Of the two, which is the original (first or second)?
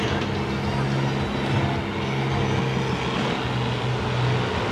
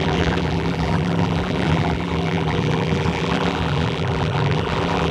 first